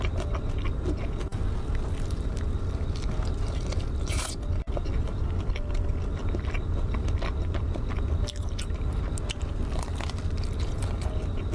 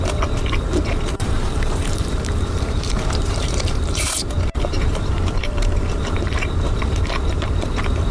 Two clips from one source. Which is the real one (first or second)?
first